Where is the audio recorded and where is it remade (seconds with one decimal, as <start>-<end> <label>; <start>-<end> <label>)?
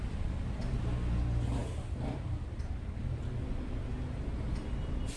0.0-5.2 recorded